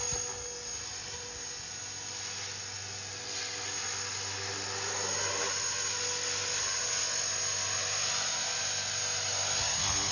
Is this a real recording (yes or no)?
yes